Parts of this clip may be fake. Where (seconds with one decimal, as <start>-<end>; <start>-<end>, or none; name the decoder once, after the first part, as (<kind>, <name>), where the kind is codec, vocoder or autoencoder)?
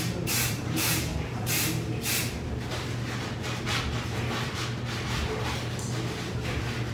0.0-2.2 (vocoder, BigVGAN v2); 6.3-6.9